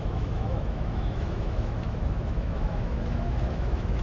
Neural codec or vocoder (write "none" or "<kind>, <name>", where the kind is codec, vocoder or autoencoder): autoencoder, DAC-VAE